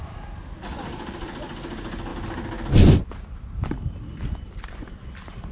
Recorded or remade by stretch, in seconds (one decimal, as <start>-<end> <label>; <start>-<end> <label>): 0.0-5.5 recorded